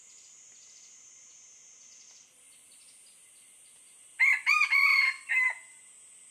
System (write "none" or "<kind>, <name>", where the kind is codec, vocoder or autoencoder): none